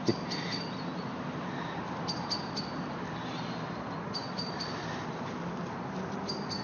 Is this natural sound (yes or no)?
yes